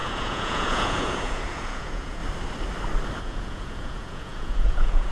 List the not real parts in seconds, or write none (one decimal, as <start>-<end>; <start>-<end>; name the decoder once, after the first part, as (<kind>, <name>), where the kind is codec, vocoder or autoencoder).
0.0-2.2 (vocoder, Vocos); 3.2-5.1